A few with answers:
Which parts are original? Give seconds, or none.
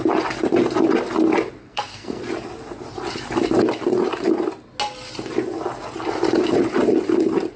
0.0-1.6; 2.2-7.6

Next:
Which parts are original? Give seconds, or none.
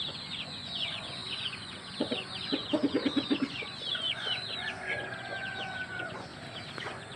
6.3-6.8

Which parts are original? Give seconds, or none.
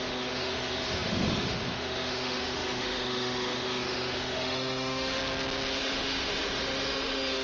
5.2-5.8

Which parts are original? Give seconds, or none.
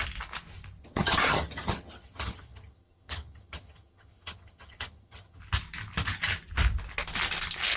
0.0-0.8; 5.4-7.8